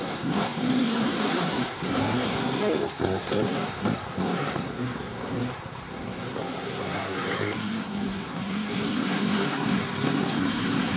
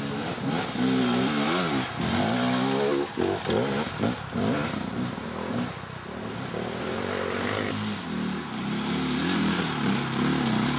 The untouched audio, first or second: second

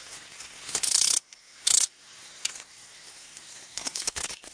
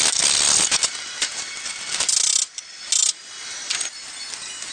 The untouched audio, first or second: second